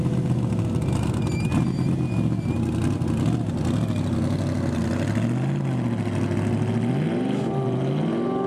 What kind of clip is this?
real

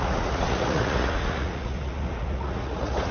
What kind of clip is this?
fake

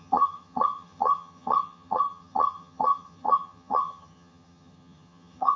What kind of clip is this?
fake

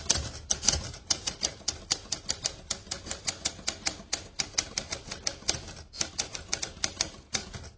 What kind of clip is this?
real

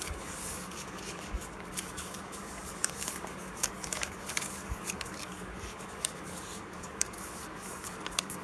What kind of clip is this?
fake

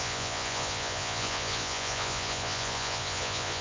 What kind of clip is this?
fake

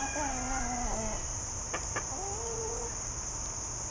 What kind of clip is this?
real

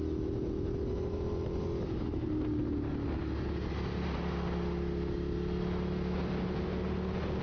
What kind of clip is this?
real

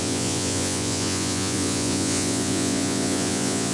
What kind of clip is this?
fake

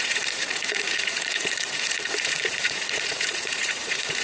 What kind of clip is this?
fake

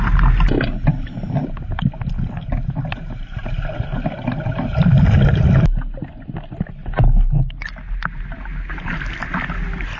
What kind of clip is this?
real